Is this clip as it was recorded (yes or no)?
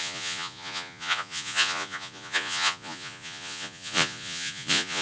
no